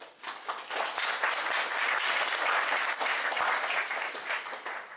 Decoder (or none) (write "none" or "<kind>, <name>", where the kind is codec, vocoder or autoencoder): none